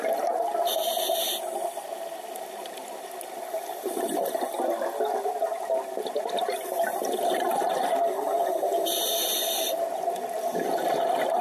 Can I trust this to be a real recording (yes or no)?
yes